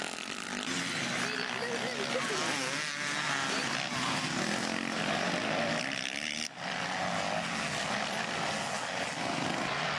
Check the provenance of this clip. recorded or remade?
recorded